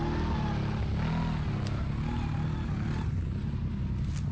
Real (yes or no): yes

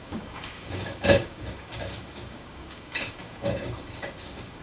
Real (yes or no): no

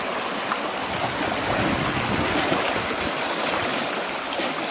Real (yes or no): yes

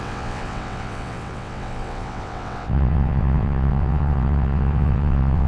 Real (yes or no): no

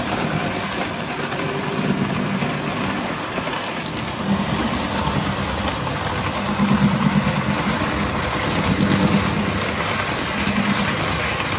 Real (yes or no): yes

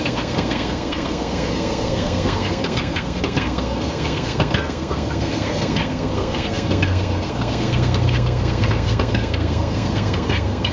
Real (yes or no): no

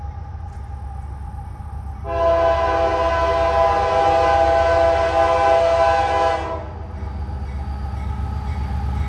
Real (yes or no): yes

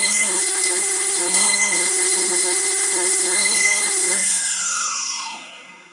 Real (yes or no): no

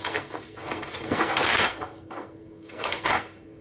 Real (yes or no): no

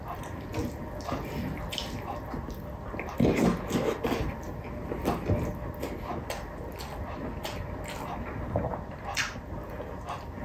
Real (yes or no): yes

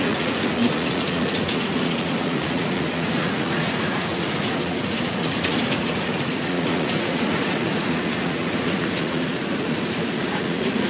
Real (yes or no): no